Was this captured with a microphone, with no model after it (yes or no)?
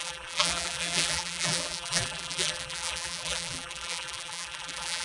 no